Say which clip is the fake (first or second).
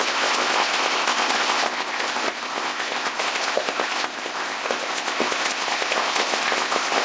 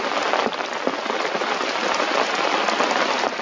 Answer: first